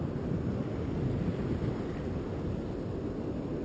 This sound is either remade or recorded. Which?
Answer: recorded